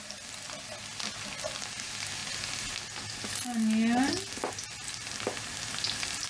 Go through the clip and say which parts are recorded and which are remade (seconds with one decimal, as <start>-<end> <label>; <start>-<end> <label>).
0.0-6.3 recorded